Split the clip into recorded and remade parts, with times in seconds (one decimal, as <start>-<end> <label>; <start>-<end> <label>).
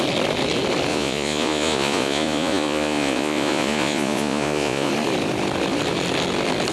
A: 0.0-0.9 recorded; 0.9-4.9 remade; 4.9-6.7 recorded